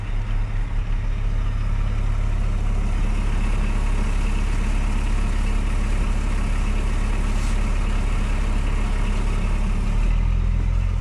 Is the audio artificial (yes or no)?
no